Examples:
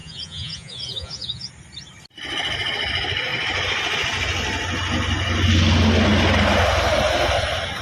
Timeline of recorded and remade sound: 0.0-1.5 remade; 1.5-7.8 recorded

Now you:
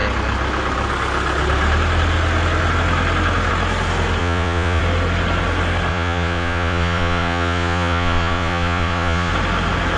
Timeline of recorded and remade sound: 0.0-4.2 recorded; 4.2-4.8 remade; 4.8-5.9 recorded; 5.9-9.3 remade; 9.3-10.0 recorded

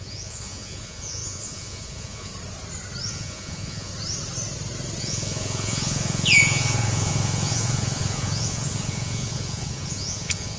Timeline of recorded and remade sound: 0.0-2.3 remade; 2.3-3.1 recorded; 3.1-3.9 remade; 3.9-5.0 recorded; 5.0-10.6 remade

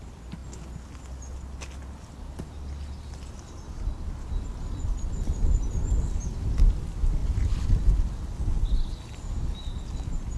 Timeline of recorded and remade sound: 0.0-10.4 recorded

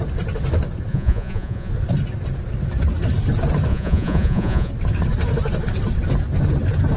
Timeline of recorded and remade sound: 0.0-0.9 recorded; 0.9-1.7 remade; 1.7-3.7 recorded; 3.7-4.7 remade; 4.7-7.0 recorded

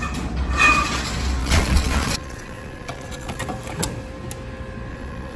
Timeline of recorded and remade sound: 0.0-1.4 recorded; 1.4-3.4 remade; 3.4-4.9 recorded; 4.9-5.4 remade

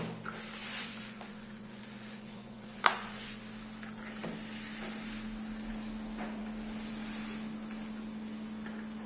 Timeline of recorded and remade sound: 0.0-0.6 recorded; 0.6-3.4 remade; 3.4-9.1 recorded

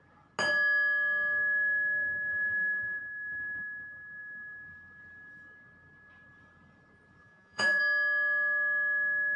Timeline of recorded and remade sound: 0.0-2.3 recorded; 2.3-3.0 remade; 3.0-7.2 recorded; 7.2-7.8 remade; 7.8-9.4 recorded